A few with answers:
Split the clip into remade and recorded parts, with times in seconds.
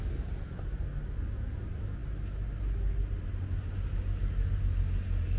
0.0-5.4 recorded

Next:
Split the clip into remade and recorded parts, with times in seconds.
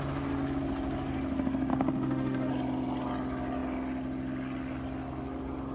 0.0-1.7 recorded; 1.7-2.5 remade; 2.5-5.7 recorded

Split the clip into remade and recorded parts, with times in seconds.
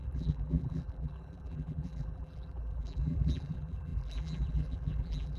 0.0-5.4 remade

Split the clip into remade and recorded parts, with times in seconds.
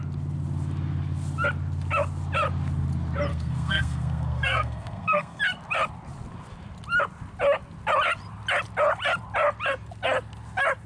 0.0-3.3 recorded; 3.3-5.4 remade; 5.4-10.9 recorded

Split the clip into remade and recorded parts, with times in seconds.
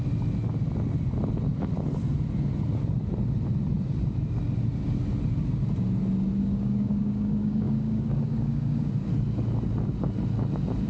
0.0-6.4 recorded; 6.4-8.9 remade; 8.9-10.9 recorded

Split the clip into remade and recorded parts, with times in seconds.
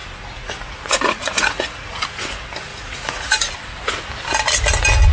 0.0-2.0 remade; 2.0-2.7 recorded; 2.7-3.3 remade; 3.3-5.1 recorded